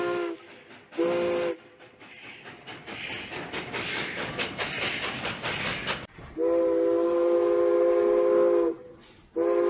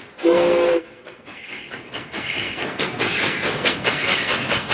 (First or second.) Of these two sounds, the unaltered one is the first